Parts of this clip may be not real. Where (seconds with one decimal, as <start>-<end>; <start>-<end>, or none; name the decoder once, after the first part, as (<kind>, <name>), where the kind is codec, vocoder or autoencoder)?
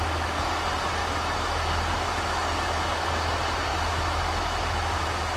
1.0-3.1 (autoencoder, DAC-VAE); 3.7-5.4